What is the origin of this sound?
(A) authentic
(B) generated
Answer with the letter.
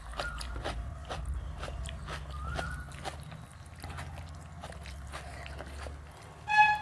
A